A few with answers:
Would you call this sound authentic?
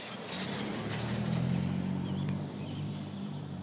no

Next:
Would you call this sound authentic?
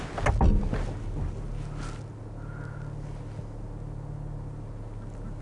yes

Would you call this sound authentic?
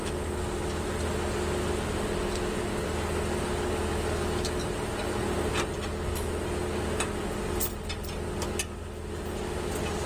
yes